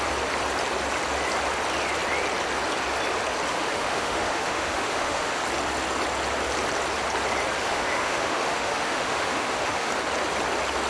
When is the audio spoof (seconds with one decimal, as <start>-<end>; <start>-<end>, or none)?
3.5-5.4; 7.6-9.9